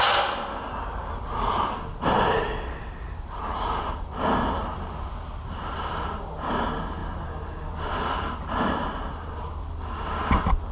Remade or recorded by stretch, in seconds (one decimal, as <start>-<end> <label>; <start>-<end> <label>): 0.0-10.7 recorded